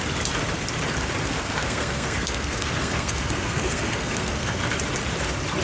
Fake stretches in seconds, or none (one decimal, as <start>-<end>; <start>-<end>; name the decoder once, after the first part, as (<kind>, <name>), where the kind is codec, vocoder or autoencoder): 1.2-4.6 (codec, SNAC)